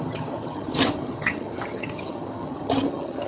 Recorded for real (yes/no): no